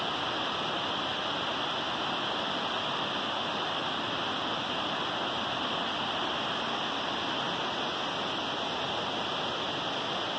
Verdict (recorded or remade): recorded